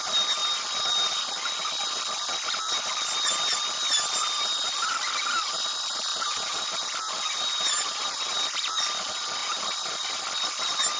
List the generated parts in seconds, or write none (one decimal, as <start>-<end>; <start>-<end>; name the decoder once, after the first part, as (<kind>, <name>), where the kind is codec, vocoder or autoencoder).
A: 6.1-8.7 (vocoder, BigVGAN v2); 9.4-10.2